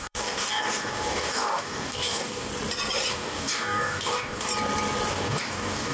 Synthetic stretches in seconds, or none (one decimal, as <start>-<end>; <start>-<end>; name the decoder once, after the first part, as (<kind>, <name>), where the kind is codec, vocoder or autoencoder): 0.0-2.5 (codec, DAC); 3.1-4.5; 5.1-5.9

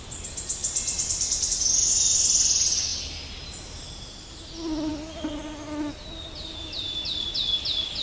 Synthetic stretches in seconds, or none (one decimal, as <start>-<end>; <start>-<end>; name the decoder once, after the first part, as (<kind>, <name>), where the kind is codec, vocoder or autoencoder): none